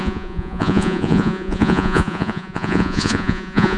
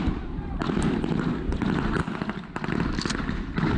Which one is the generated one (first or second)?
first